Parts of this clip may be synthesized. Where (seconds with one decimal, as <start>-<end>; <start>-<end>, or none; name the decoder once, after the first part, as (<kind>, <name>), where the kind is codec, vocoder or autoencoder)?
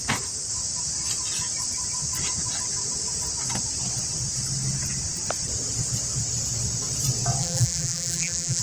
7.4-8.6 (vocoder, BigVGAN v2)